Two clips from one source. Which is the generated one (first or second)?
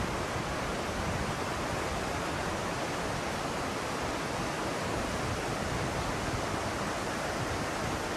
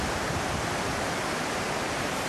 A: second